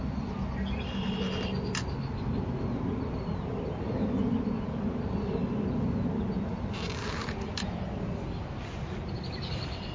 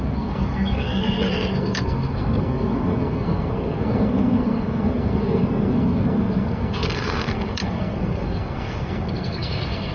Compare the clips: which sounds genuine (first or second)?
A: first